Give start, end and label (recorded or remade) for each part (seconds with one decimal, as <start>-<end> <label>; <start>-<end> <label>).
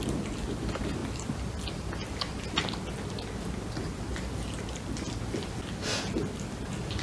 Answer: 0.0-7.0 recorded